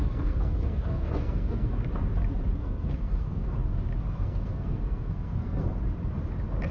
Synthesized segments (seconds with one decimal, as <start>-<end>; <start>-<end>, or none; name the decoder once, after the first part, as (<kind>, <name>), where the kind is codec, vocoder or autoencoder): 0.0-1.9 (codec, SNAC); 2.6-3.5; 4.0-5.7